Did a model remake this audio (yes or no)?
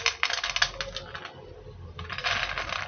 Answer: no